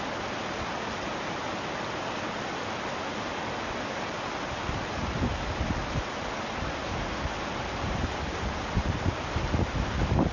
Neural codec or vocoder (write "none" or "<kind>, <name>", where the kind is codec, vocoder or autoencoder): none